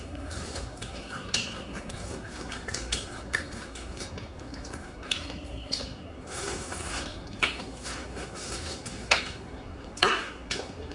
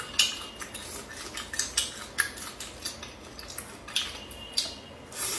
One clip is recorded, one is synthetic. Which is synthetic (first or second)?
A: first